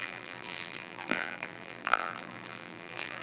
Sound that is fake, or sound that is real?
fake